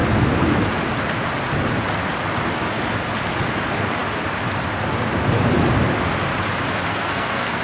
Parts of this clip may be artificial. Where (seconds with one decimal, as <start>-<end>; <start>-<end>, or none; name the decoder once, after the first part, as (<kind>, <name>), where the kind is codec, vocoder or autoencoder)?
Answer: 6.9-7.6 (codec, SNAC)